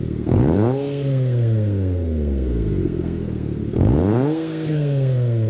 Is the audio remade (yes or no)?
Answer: yes